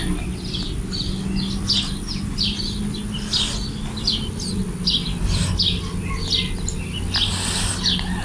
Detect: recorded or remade recorded